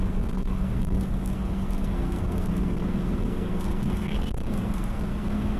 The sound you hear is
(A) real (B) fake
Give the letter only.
B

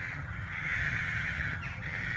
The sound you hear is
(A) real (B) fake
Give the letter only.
B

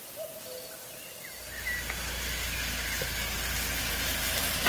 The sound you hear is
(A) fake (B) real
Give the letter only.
B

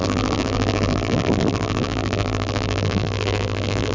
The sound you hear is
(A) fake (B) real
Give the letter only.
A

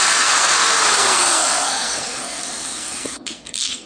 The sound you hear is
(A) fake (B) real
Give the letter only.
A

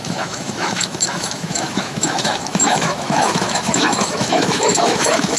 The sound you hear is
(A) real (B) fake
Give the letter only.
B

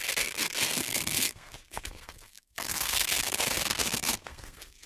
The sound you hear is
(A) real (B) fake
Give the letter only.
B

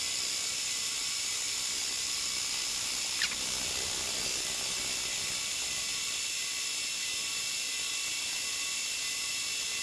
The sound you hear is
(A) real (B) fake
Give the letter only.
A